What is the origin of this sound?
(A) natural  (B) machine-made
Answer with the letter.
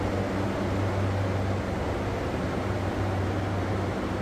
A